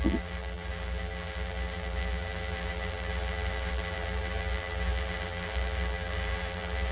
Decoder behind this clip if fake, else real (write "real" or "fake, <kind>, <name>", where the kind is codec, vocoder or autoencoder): fake, vocoder, BigVGAN v2